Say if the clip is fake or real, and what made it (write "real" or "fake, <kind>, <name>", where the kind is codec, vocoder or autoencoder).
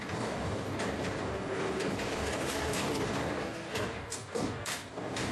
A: fake, codec, DAC